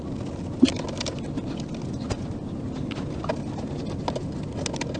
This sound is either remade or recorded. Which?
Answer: recorded